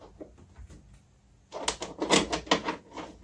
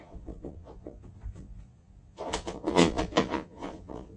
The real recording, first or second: first